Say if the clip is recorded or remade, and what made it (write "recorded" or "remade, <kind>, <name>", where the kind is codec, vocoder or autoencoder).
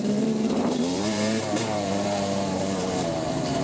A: remade, vocoder, BigVGAN v2